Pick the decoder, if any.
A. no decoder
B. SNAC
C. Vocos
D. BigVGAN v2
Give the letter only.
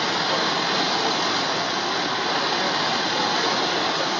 A